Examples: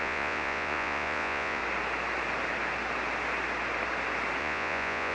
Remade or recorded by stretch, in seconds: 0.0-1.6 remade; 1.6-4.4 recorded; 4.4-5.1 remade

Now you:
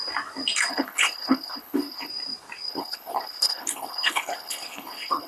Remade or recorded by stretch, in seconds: 0.0-0.7 recorded; 0.7-2.1 remade; 2.1-2.7 recorded; 2.7-5.3 remade

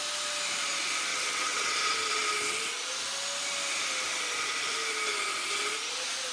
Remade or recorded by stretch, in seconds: 0.0-1.1 recorded; 1.1-1.7 remade; 1.7-6.3 recorded

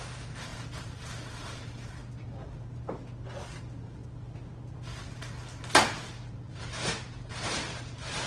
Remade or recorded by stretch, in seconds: 0.0-2.0 remade; 2.0-3.6 recorded; 3.6-4.0 remade; 4.0-6.5 recorded; 6.5-8.3 remade

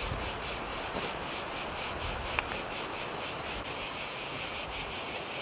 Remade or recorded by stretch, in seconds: 0.0-0.7 remade; 0.7-3.9 recorded; 3.9-5.4 remade